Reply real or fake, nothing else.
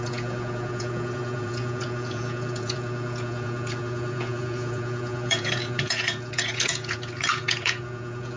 fake